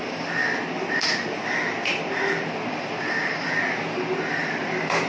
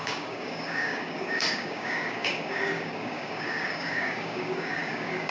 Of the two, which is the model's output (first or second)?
second